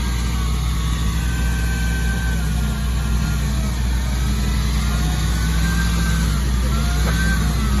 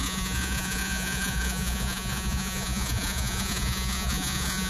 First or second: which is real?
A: first